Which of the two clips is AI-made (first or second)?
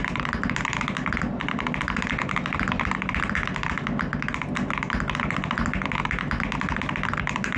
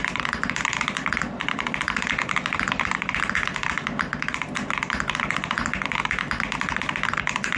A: second